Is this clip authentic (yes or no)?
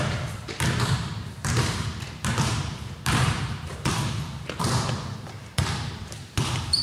no